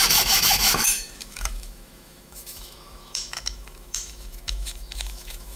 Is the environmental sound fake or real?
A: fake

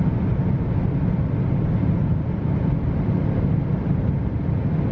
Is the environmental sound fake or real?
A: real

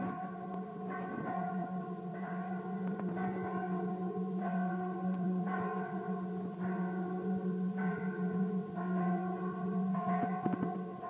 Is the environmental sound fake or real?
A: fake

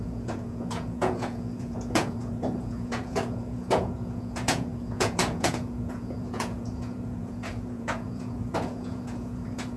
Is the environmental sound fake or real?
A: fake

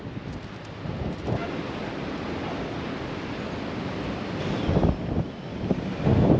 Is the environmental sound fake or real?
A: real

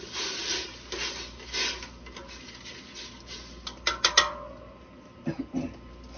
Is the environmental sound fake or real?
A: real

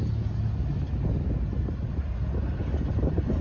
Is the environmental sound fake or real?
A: real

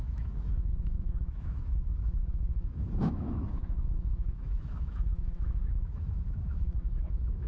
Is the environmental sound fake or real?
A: fake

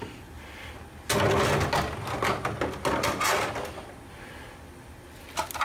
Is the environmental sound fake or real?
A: real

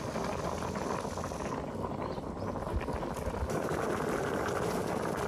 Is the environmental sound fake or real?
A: real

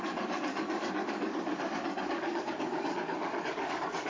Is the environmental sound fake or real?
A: fake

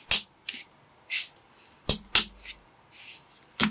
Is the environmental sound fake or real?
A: real